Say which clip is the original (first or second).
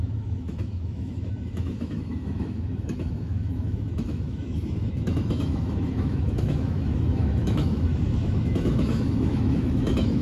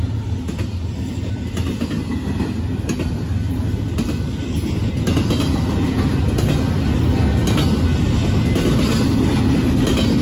second